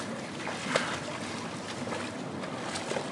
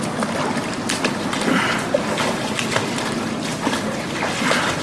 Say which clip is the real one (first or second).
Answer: second